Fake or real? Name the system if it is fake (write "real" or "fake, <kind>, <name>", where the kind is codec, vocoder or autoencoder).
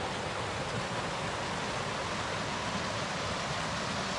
real